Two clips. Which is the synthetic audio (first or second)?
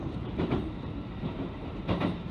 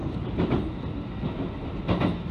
first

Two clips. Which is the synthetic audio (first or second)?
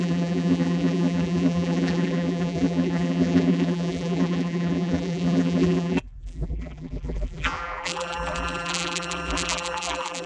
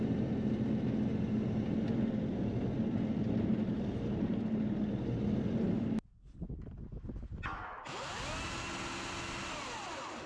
first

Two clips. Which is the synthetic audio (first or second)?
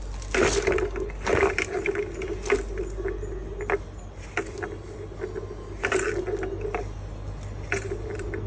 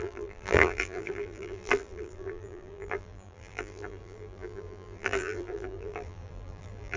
second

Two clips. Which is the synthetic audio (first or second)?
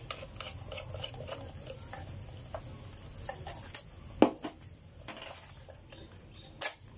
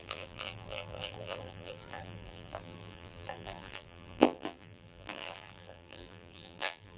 second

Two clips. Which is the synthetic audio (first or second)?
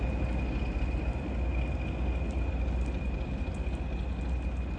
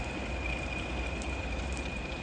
second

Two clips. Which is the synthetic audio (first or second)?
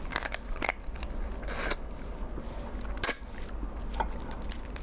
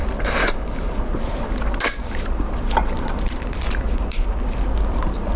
second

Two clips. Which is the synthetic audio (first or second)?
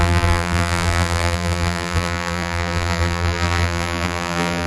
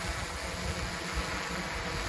first